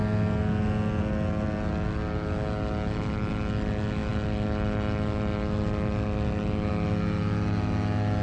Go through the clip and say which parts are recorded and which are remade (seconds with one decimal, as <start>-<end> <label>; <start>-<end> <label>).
0.0-8.2 recorded

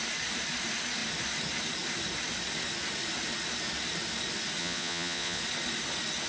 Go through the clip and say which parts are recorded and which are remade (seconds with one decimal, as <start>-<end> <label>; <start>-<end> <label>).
0.0-4.6 recorded; 4.6-5.4 remade; 5.4-6.3 recorded

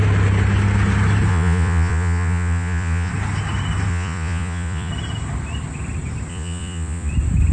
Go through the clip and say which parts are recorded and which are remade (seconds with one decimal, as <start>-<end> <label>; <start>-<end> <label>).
0.0-1.3 recorded; 1.3-3.1 remade; 3.1-3.9 recorded; 3.9-4.9 remade; 4.9-6.3 recorded; 6.3-7.1 remade; 7.1-7.5 recorded